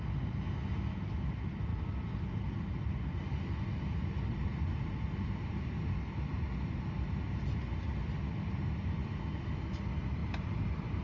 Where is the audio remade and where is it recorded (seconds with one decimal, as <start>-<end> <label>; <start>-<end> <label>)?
0.0-10.2 recorded; 10.2-11.0 remade